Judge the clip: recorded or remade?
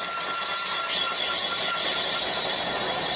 recorded